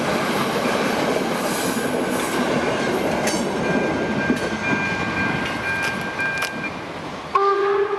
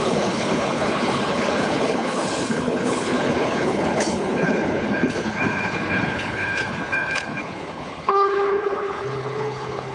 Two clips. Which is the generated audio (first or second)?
second